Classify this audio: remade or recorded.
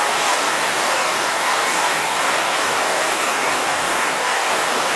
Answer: remade